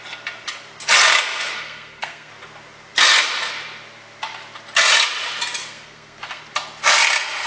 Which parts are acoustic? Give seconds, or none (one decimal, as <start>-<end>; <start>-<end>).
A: 0.0-1.6; 2.3-5.6; 6.4-7.5